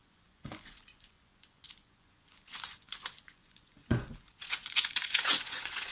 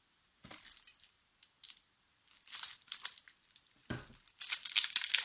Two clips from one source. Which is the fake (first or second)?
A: first